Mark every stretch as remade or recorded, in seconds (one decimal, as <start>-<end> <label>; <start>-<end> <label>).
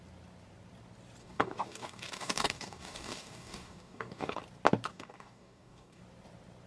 0.0-1.2 recorded; 1.2-4.4 remade; 4.4-4.9 recorded; 4.9-6.0 remade; 6.0-6.7 recorded